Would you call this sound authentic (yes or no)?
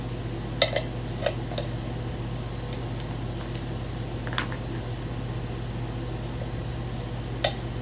yes